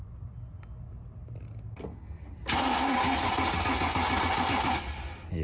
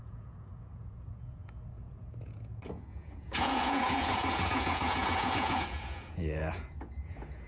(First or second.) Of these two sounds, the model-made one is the second